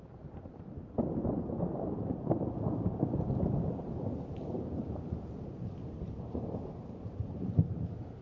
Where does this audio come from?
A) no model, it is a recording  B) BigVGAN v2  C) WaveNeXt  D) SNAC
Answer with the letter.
B